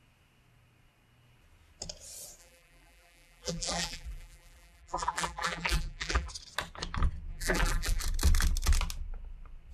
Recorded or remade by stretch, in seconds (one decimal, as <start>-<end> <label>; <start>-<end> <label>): 0.0-2.4 recorded; 2.4-6.3 remade; 6.3-7.3 recorded; 7.3-8.0 remade; 8.0-9.7 recorded